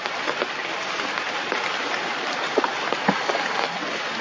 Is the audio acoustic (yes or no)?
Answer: yes